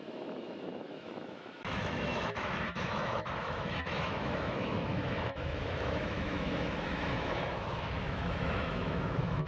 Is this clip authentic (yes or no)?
no